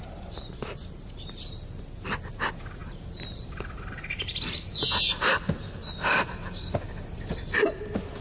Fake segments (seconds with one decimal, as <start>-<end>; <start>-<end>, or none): none